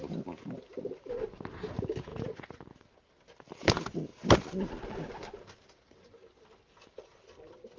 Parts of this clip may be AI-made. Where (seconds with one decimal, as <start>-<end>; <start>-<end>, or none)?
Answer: none